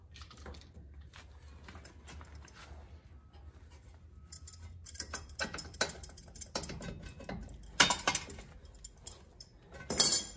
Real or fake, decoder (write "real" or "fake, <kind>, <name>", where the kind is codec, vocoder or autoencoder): real